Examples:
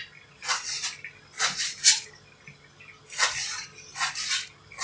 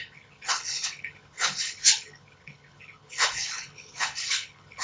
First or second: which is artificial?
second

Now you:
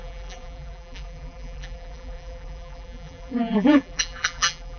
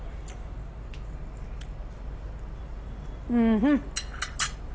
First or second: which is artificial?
first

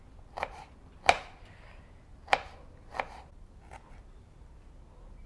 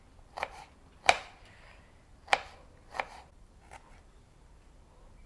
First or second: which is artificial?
second